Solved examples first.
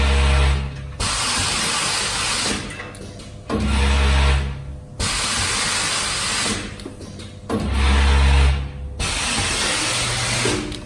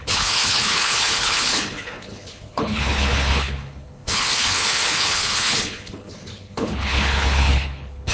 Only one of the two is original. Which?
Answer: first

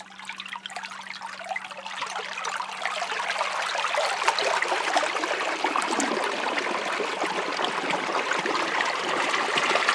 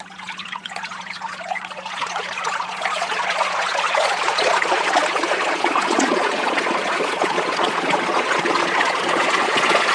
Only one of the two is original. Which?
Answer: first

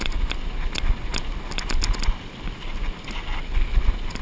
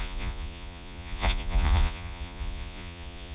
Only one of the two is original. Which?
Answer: first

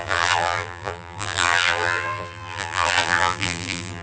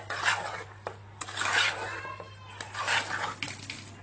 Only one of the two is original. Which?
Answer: second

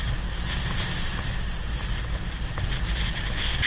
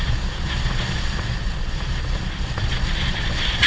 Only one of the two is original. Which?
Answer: first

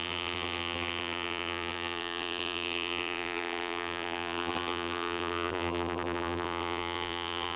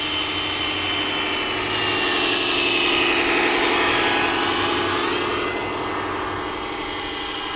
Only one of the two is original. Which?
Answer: second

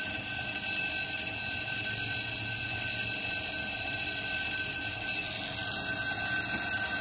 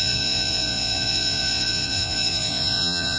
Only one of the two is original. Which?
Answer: first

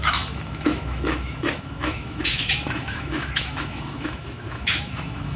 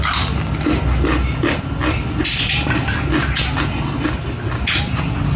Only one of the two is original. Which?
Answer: second